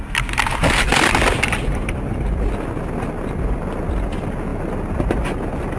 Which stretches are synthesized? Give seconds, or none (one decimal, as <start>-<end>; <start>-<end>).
none